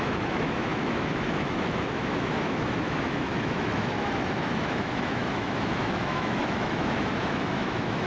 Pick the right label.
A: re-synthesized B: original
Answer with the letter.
A